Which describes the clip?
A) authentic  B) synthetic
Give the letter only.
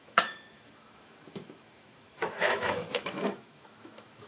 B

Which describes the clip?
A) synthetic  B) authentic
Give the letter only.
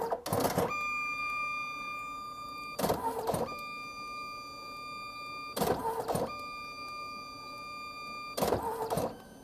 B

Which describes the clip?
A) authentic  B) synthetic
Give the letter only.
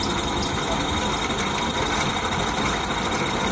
A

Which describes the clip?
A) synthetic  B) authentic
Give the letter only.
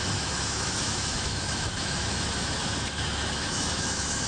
A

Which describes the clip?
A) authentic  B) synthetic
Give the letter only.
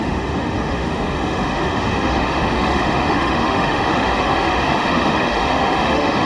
B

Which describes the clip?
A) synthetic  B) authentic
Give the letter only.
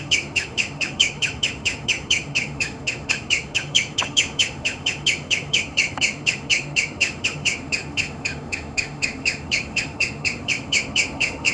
A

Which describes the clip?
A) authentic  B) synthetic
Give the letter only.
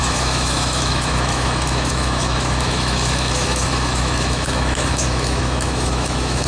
B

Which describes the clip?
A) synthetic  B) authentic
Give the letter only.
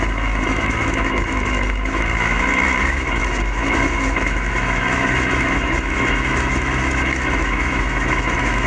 A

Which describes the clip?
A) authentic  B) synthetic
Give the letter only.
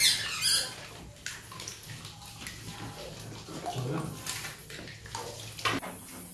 A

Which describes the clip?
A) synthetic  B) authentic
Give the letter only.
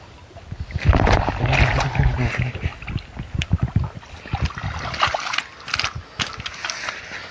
B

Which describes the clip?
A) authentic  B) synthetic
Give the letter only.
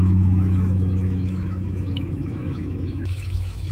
B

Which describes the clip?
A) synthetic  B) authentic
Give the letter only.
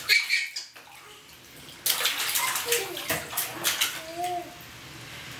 B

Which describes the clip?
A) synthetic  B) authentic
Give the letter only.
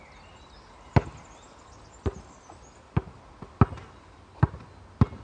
B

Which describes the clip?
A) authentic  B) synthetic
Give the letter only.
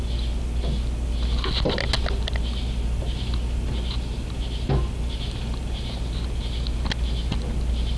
A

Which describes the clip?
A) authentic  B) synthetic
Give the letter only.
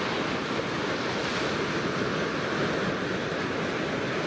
A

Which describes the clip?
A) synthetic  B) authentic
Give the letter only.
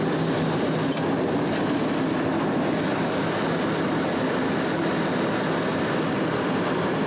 B